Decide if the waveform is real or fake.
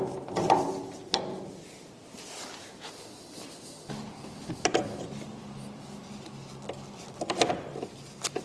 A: real